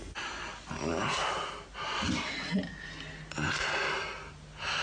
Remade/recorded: recorded